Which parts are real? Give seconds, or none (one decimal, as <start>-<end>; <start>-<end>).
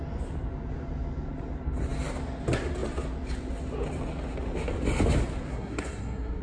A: 0.0-5.5